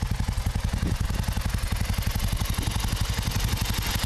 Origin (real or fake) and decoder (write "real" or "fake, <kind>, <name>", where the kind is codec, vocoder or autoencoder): real